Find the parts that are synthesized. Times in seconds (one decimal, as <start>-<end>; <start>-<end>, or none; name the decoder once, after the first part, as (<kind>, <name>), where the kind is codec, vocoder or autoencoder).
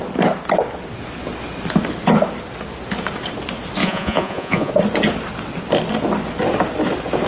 3.8-4.7 (vocoder, Vocos)